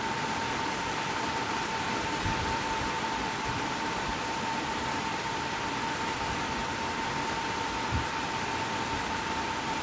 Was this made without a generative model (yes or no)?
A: no